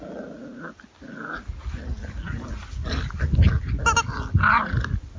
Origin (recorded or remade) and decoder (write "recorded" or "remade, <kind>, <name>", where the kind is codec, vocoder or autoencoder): recorded